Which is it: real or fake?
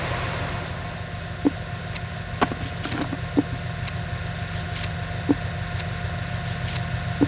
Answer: real